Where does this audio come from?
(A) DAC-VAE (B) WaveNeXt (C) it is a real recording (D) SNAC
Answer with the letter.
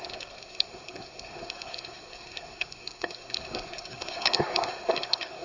D